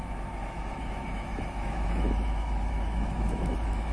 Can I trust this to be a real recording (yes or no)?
no